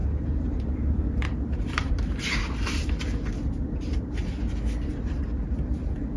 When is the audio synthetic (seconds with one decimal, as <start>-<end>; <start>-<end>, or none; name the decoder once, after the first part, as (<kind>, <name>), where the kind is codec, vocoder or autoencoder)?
0.0-2.8 (vocoder, BigVGAN v2)